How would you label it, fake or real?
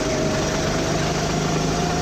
real